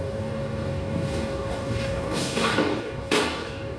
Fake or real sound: fake